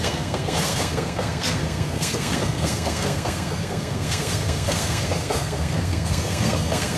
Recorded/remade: remade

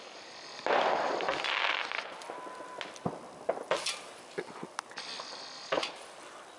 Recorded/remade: recorded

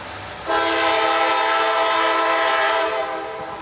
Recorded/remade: recorded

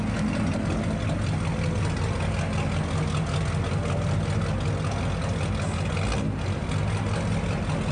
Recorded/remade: recorded